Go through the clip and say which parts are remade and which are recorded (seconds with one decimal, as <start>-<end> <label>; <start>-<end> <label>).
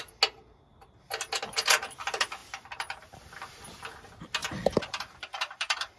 0.0-4.4 recorded; 4.4-6.0 remade